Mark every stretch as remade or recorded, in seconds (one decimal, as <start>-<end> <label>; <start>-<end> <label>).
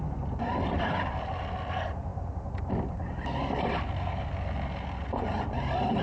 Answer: 0.0-6.0 recorded